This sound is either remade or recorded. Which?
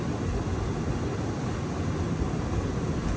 recorded